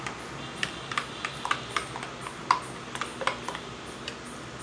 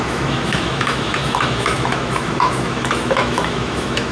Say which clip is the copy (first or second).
second